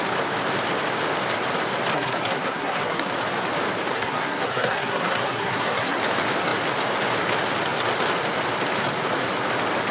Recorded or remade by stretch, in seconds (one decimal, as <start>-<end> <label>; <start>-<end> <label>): 0.0-1.9 recorded; 1.9-3.1 remade; 3.1-3.9 recorded; 3.9-6.0 remade; 6.0-9.9 recorded